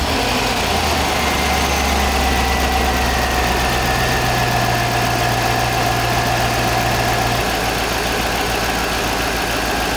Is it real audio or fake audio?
real